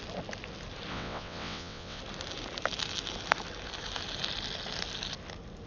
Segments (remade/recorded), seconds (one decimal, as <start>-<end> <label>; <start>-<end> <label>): 0.0-0.9 recorded; 0.9-2.0 remade; 2.0-5.7 recorded